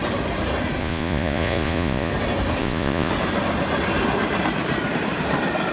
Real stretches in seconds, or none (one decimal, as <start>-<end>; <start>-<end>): 0.0-0.8; 2.1-2.6; 3.1-5.7